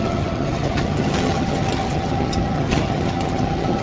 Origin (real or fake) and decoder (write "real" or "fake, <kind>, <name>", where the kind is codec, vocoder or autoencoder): fake, vocoder, HiFi-GAN